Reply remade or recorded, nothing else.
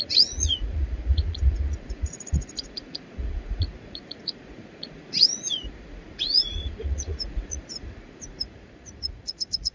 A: remade